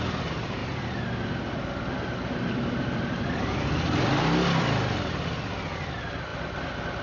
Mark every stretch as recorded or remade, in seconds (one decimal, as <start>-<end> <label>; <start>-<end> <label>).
0.0-7.0 remade